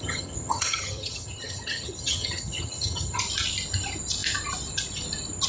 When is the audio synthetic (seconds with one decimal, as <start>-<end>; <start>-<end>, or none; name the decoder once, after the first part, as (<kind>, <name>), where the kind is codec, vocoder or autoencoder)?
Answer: 0.0-3.2 (vocoder, HiFi-GAN)